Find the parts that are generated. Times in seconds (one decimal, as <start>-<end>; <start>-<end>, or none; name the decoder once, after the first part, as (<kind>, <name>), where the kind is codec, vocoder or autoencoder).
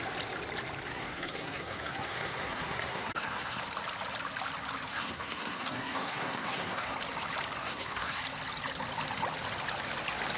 0.9-3.6 (codec, SNAC); 4.9-6.9; 7.6-8.2